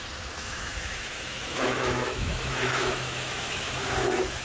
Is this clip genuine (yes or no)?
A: no